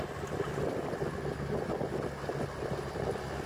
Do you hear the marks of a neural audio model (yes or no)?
no